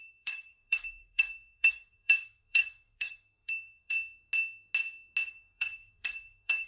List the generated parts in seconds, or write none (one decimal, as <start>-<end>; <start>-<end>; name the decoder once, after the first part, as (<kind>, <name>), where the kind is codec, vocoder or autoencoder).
0.0-3.9 (codec, SNAC); 5.3-6.7